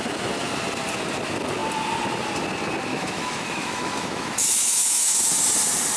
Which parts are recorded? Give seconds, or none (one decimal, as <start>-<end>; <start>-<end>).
0.0-2.9; 5.3-6.0

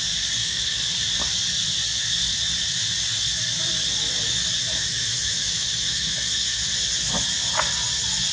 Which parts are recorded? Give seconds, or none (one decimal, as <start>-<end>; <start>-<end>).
0.0-0.4; 0.9-4.6; 6.7-8.3

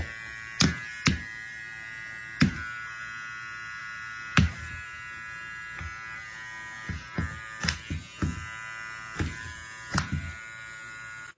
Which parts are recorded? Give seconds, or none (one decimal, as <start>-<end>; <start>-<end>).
0.0-11.4